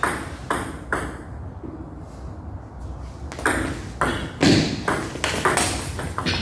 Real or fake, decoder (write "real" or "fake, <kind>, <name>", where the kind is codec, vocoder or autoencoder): real